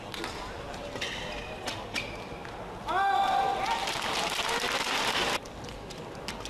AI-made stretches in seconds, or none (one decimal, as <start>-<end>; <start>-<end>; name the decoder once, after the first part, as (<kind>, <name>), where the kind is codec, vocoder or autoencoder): none